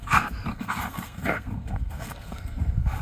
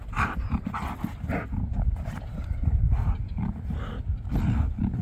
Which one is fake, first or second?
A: first